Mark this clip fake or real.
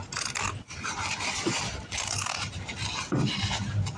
real